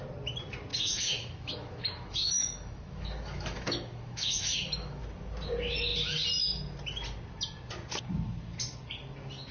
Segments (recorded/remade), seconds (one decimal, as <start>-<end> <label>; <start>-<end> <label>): 0.0-0.7 recorded; 0.7-5.0 remade; 5.0-9.5 recorded